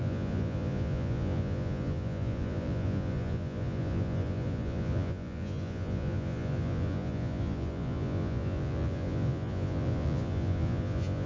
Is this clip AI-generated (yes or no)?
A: yes